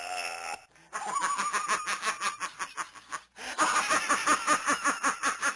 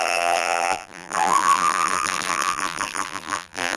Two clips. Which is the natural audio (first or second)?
first